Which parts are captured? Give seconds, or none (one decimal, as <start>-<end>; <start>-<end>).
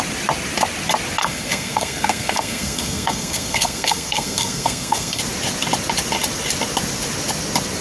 0.0-1.2; 5.2-7.8